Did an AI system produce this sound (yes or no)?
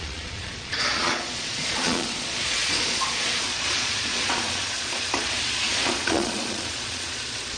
yes